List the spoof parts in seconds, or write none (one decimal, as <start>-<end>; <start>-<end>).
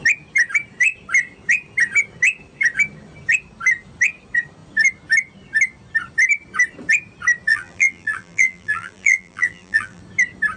7.5-10.0